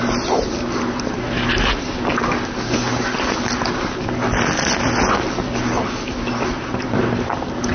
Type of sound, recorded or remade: recorded